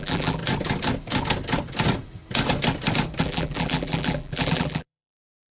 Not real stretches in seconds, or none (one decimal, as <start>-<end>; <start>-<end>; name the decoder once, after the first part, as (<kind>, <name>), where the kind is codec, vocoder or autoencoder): 0.0-0.4 (vocoder, BigVGAN v2); 3.2-5.5